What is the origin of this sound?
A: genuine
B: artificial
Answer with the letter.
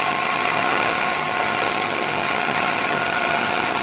B